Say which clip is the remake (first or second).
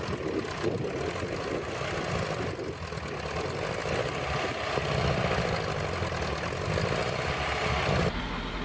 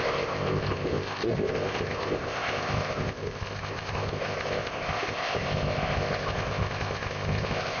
second